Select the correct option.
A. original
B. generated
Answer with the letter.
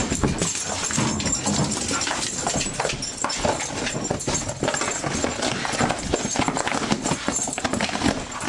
A